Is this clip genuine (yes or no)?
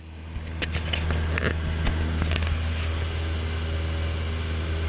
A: yes